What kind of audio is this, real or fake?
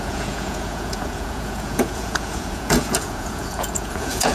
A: fake